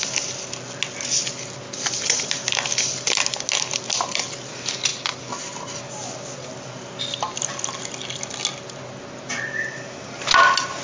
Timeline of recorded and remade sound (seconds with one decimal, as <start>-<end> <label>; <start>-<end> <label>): 0.0-10.8 recorded